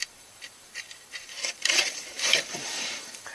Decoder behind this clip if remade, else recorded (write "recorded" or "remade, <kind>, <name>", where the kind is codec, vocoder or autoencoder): remade, vocoder, BigVGAN v2